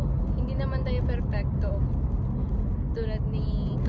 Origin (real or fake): real